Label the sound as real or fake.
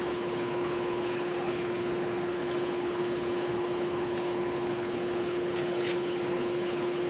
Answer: fake